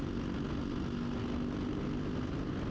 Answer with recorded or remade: recorded